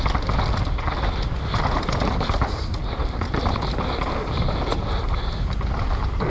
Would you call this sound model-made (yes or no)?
no